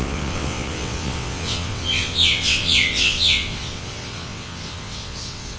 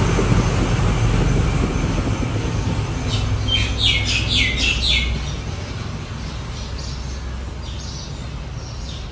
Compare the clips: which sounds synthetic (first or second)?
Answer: first